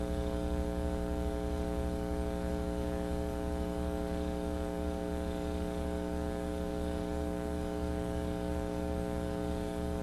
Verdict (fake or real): fake